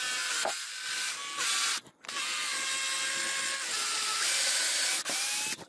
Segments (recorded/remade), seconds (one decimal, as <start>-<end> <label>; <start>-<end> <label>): 0.0-5.7 recorded